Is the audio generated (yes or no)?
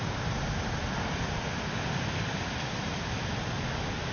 no